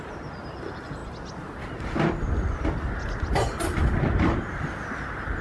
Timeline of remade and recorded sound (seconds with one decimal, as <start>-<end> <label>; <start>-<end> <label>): 0.0-5.4 recorded